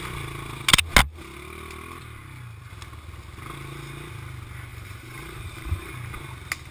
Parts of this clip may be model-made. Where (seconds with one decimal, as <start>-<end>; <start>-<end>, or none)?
4.7-5.9